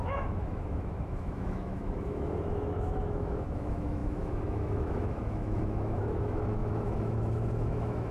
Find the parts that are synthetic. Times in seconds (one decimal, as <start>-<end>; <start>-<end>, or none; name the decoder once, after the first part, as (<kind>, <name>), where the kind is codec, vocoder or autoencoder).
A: 0.0-8.1 (autoencoder, DAC-VAE)